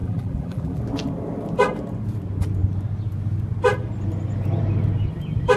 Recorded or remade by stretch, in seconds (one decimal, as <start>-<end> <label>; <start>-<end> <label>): 0.0-0.8 remade; 0.8-5.6 recorded